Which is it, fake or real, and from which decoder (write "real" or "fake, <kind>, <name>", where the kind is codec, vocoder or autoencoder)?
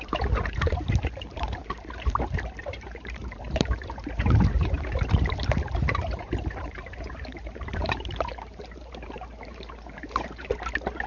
fake, vocoder, BigVGAN v2